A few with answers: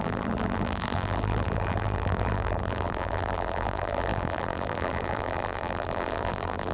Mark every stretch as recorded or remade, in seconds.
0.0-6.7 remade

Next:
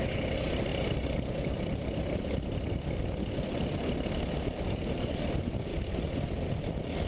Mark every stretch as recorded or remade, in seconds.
0.0-0.7 recorded; 0.7-4.7 remade; 4.7-5.7 recorded; 5.7-7.1 remade